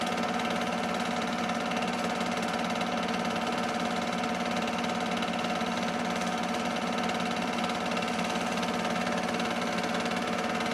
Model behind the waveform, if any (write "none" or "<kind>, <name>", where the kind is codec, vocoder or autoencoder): none